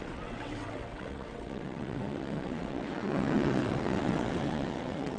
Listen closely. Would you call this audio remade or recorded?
remade